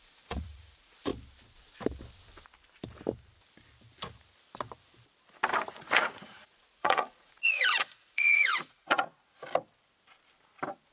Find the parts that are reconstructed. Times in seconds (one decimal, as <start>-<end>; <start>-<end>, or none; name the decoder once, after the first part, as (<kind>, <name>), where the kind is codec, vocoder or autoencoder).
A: 0.0-1.1 (vocoder, Vocos); 5.7-9.4